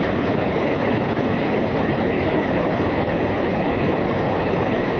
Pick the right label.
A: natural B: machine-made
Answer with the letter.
B